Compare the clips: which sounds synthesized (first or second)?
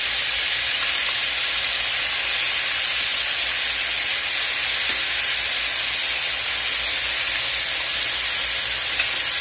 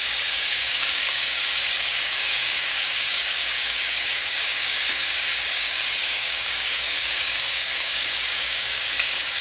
second